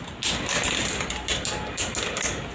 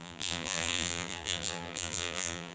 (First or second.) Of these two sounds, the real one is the first